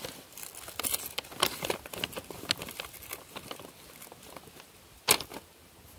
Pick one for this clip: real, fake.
real